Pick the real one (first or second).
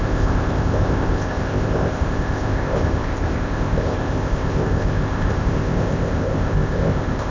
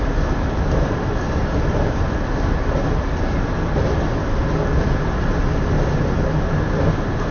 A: second